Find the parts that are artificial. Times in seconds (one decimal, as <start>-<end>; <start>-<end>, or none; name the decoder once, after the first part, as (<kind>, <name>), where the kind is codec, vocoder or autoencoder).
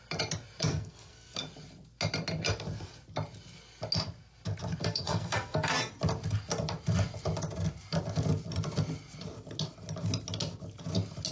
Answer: 0.7-1.4 (codec, SNAC); 4.8-5.9